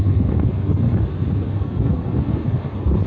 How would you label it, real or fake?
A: fake